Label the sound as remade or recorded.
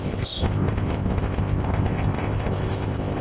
remade